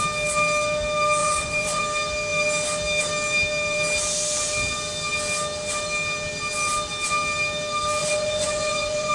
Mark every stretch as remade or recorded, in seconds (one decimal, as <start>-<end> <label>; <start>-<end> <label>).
0.0-1.2 recorded; 1.2-1.8 remade; 1.8-8.0 recorded; 8.0-9.1 remade